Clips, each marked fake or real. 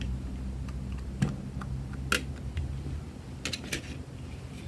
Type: real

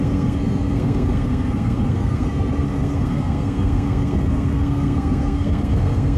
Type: fake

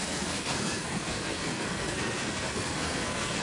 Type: fake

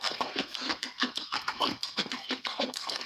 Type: fake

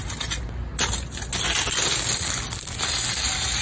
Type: real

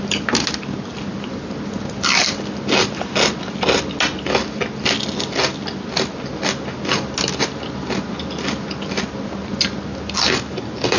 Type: real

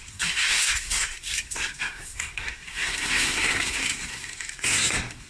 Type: fake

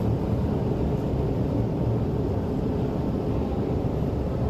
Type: real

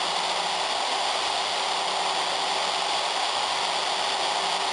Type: real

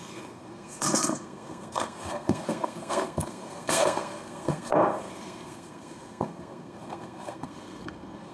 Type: fake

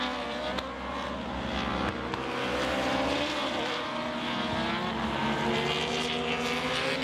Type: real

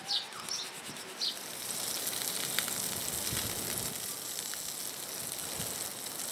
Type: real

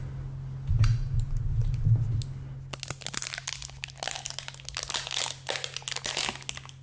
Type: real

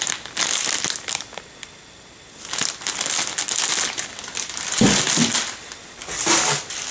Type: real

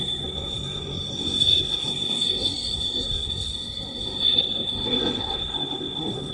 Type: fake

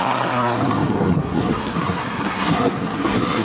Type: fake